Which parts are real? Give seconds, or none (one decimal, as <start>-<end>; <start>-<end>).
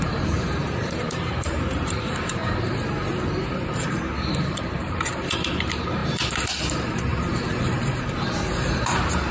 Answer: 2.4-3.5